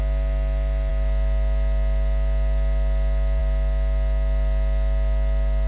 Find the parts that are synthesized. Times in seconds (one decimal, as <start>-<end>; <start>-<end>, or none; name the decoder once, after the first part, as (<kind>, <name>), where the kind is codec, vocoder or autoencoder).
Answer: none

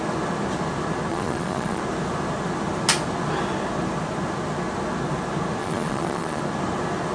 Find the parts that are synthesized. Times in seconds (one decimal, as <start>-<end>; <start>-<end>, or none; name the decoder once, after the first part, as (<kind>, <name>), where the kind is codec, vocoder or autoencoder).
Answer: 1.1-1.8 (vocoder, Vocos); 5.6-6.4

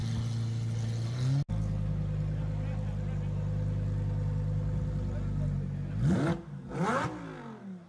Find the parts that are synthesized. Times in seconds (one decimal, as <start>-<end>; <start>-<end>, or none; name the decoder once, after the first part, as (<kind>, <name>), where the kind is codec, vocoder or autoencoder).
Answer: none

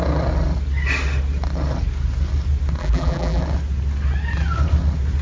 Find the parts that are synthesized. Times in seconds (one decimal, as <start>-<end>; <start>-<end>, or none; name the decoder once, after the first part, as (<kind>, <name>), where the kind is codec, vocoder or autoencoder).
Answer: 2.8-3.4 (vocoder, BigVGAN v2)

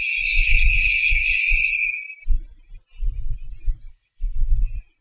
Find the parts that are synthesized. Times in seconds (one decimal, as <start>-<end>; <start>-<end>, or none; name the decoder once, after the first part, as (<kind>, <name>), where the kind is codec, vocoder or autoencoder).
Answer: 0.5-1.4 (codec, HILCodec); 3.9-4.5